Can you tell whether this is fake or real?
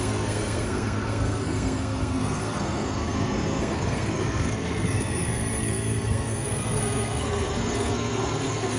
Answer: fake